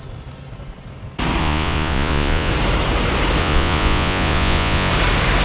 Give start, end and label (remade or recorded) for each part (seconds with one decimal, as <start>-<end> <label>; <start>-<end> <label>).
0.0-1.4 recorded; 1.4-2.5 remade; 2.5-3.4 recorded; 3.4-4.9 remade; 4.9-5.4 recorded